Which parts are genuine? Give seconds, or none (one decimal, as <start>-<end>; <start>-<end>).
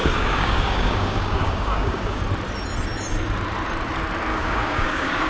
2.2-4.3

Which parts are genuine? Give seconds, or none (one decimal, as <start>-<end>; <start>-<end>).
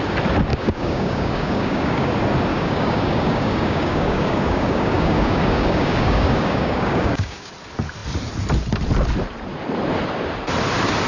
0.0-0.5; 2.1-2.5; 7.5-11.1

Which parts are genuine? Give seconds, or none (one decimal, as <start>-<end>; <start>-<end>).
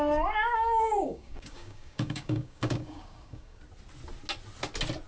0.0-0.5; 3.6-5.1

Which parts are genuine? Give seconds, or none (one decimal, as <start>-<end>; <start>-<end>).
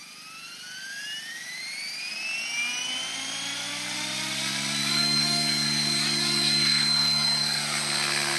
0.0-4.8; 7.8-8.4